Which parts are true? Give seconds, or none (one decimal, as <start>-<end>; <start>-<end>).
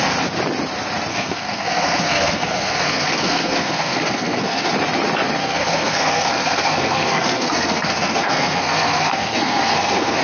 0.0-1.1; 4.7-5.4